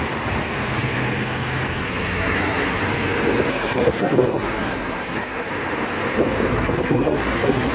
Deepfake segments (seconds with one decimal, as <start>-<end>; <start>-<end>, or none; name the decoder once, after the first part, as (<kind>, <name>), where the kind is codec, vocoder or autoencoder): 1.8-2.8 (codec, SNAC); 3.5-5.5; 6.5-7.7